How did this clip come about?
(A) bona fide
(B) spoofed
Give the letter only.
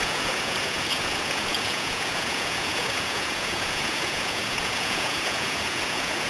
B